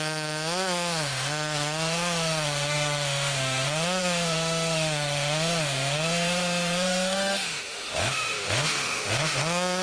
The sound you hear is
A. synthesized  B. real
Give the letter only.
A